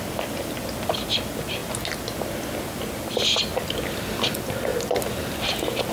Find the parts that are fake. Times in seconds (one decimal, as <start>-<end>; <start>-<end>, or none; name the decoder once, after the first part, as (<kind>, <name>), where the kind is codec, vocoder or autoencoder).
none

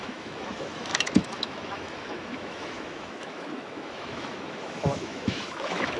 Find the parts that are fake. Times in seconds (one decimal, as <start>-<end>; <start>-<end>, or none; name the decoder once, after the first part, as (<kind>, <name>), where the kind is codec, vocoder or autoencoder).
0.0-6.0 (autoencoder, DAC-VAE)

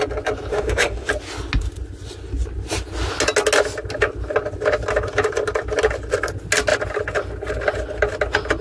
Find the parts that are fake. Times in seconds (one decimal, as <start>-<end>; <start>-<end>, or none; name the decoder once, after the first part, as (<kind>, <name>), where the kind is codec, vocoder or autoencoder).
0.5-1.1 (autoencoder, DAC-VAE)

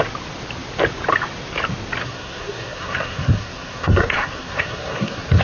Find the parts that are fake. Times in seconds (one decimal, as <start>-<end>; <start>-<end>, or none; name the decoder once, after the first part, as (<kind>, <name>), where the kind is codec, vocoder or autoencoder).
2.0-5.4 (codec, SNAC)

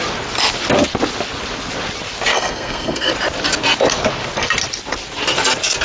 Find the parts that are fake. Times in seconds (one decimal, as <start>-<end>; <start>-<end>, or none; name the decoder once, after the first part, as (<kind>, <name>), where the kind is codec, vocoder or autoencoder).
2.3-3.1 (codec, SNAC)

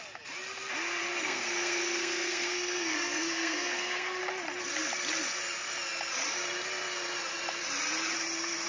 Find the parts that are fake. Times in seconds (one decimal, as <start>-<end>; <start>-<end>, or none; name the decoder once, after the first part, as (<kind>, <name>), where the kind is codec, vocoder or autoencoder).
1.0-4.2 (codec, SNAC)

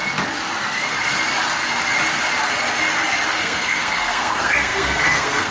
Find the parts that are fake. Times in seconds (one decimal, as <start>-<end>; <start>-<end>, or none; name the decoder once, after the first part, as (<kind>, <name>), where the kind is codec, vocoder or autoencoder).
3.3-5.5 (codec, SNAC)

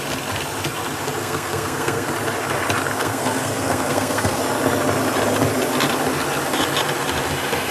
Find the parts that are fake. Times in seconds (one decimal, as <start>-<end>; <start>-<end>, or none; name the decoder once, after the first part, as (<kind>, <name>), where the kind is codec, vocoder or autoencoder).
1.2-2.1 (codec, SNAC); 3.0-4.4